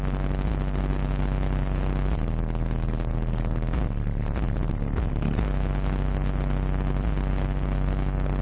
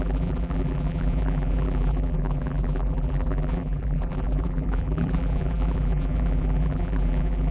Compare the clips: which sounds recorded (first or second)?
first